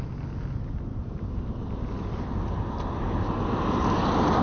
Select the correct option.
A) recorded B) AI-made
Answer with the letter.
A